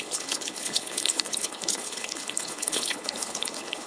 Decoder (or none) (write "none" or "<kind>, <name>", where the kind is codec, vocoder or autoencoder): codec, HILCodec